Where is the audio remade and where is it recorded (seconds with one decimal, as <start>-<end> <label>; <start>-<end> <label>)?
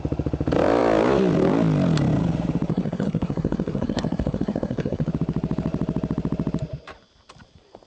0.0-2.7 recorded; 2.7-5.1 remade; 5.1-7.9 recorded